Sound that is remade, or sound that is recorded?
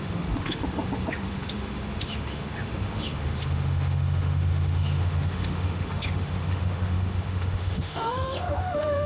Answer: remade